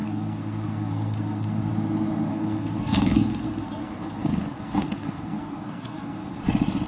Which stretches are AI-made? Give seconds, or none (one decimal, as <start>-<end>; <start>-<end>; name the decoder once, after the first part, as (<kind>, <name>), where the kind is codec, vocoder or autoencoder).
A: 0.0-1.7 (codec, SNAC); 2.3-6.4